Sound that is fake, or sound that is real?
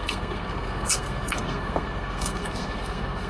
fake